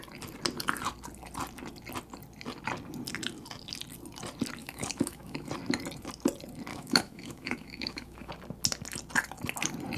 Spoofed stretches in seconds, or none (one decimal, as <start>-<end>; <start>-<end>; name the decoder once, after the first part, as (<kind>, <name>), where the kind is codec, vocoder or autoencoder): 4.6-5.5 (autoencoder, DAC-VAE); 6.7-8.3